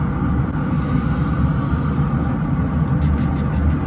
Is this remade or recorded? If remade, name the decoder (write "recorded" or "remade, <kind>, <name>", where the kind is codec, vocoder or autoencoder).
recorded